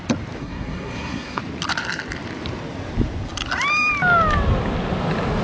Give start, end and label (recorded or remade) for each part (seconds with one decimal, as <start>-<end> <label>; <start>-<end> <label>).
0.0-0.4 recorded; 0.4-1.4 remade; 1.4-5.4 recorded